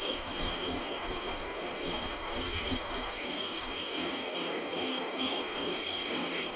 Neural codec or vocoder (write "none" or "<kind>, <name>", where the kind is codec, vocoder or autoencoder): codec, DAC